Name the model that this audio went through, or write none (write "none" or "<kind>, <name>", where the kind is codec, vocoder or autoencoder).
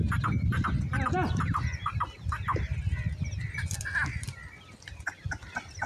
none